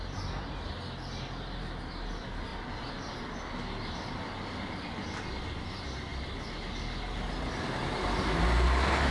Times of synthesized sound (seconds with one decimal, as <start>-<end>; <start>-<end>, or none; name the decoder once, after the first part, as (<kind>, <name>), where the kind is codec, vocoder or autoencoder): none

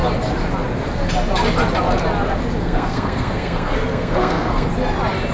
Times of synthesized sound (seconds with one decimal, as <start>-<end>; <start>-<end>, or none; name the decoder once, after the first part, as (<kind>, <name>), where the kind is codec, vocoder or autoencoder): 2.6-4.7 (codec, SNAC)

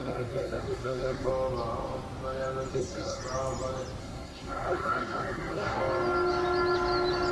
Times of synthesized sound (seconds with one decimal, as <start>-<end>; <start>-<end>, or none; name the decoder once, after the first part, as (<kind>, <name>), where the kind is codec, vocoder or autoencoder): 0.0-1.3 (codec, SNAC); 2.7-3.2; 4.0-5.8

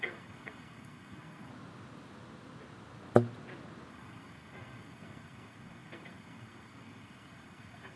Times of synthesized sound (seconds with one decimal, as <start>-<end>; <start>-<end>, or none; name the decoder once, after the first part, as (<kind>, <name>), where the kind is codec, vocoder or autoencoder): 0.0-1.5 (codec, SNAC); 3.9-8.0

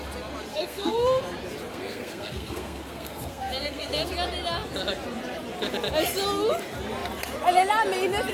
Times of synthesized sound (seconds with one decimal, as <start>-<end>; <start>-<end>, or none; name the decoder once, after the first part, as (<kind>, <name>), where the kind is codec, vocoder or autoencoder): 0.5-1.2 (codec, SNAC); 1.7-4.1